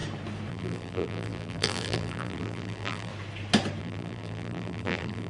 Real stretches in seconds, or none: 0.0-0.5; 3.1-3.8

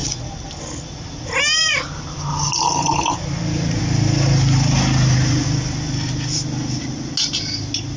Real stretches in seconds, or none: 0.0-8.0

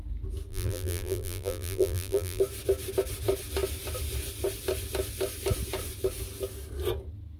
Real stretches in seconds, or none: 0.0-0.5; 2.4-7.4

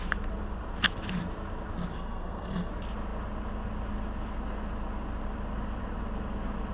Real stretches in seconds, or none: 0.0-1.9; 2.7-6.7

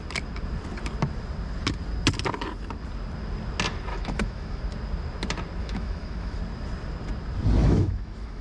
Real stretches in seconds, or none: 0.0-3.9; 4.6-5.6; 6.4-7.6

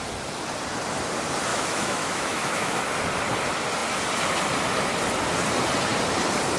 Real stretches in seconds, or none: 0.0-1.5; 2.8-6.6

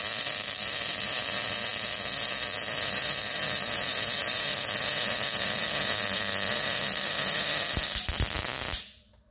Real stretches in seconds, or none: 1.7-2.7